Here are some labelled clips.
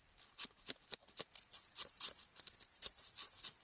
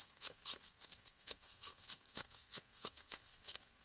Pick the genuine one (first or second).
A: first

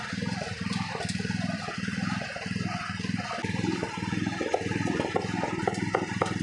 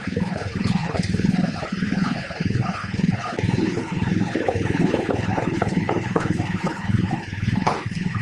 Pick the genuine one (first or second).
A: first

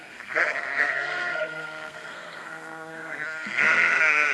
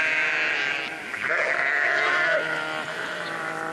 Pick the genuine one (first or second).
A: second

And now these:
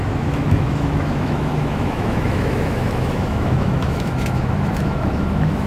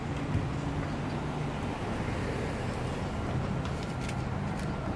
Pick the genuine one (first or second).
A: second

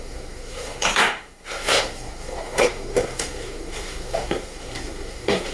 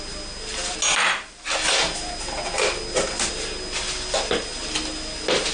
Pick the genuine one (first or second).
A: second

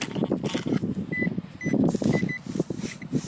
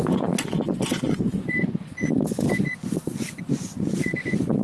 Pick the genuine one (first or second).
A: first